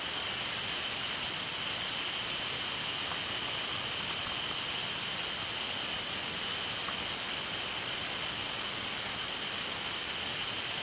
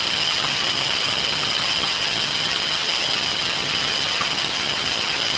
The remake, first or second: second